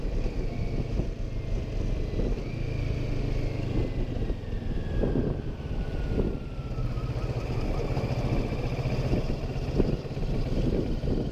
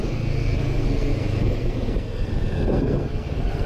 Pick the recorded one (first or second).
first